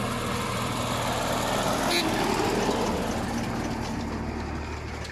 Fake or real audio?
real